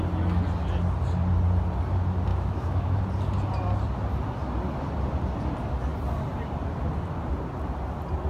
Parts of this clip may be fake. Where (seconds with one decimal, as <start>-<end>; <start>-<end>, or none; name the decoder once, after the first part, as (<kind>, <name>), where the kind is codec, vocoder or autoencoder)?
2.3-3.0 (autoencoder, DAC-VAE)

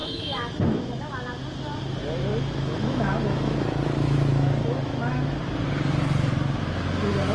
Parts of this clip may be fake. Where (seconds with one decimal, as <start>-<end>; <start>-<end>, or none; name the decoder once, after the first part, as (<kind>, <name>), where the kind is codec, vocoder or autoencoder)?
0.0-1.1 (autoencoder, DAC-VAE); 2.3-5.4

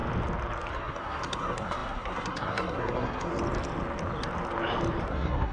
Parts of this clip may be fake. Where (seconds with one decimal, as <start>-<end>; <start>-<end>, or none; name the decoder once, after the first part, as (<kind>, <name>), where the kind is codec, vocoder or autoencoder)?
0.7-3.3 (codec, SNAC); 5.1-5.5

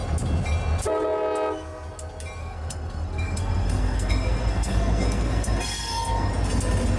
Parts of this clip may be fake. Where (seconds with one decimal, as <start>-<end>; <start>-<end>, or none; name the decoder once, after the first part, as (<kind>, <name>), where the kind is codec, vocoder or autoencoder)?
2.4-6.3 (codec, SNAC)

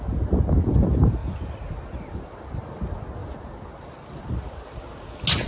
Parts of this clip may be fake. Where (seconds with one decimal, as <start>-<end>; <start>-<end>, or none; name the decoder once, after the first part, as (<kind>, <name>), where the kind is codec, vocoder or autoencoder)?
1.2-2.4 (vocoder, BigVGAN v2); 3.2-5.1